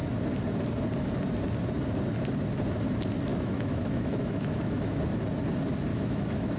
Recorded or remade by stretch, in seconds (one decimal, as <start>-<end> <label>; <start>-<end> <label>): 0.0-3.3 recorded; 3.3-5.0 remade; 5.0-5.9 recorded; 5.9-6.6 remade